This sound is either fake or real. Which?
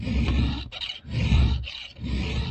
fake